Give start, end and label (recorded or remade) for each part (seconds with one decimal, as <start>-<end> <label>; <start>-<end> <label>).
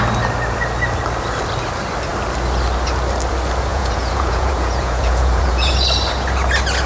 0.0-3.7 recorded; 3.7-5.7 remade; 5.7-6.9 recorded